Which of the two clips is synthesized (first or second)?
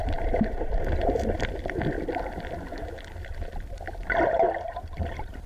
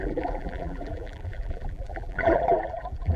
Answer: second